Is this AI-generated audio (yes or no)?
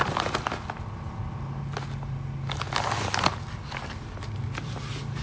no